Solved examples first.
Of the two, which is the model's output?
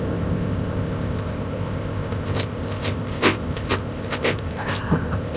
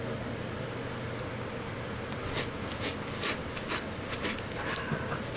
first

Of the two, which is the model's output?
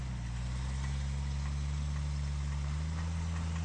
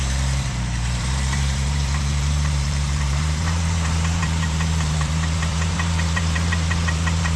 second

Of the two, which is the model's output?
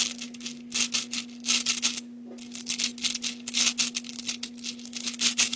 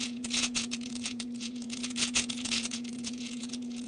second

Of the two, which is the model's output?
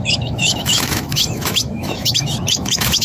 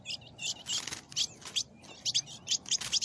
first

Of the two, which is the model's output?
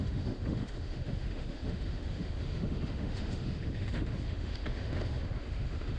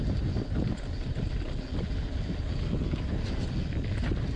first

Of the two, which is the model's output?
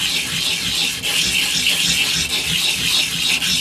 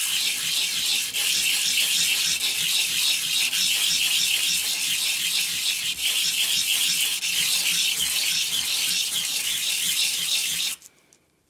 second